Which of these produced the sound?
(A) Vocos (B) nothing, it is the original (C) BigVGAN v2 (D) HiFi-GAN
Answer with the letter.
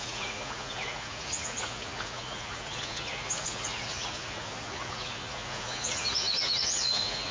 A